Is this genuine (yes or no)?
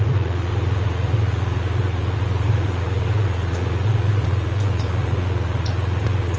no